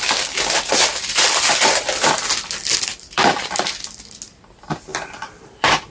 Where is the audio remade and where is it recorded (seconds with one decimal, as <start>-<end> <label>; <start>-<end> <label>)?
0.0-2.9 recorded; 2.9-3.7 remade; 3.7-4.9 recorded; 4.9-5.9 remade